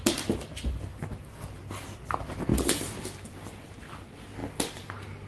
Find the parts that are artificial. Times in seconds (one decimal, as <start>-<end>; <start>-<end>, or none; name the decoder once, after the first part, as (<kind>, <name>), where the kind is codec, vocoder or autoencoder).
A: 0.9-1.6 (vocoder, BigVGAN v2); 2.5-3.8; 4.4-5.3